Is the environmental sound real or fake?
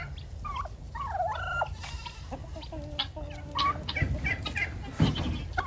real